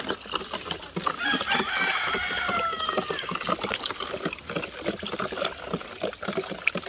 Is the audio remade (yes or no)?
no